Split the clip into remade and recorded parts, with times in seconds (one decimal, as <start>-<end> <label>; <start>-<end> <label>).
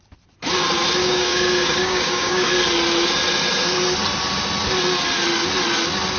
0.0-1.0 recorded; 1.0-2.5 remade; 2.5-6.2 recorded